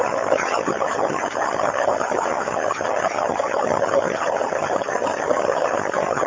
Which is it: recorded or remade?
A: remade